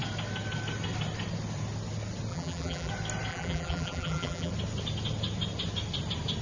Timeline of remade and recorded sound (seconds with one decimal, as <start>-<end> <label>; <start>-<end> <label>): 0.0-2.3 recorded; 2.3-2.9 remade; 2.9-3.3 recorded; 3.3-4.5 remade; 4.5-6.4 recorded